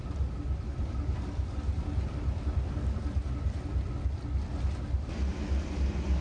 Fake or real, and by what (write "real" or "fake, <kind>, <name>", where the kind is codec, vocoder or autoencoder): real